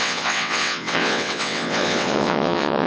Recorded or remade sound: remade